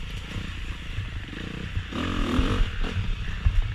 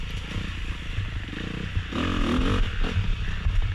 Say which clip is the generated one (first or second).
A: first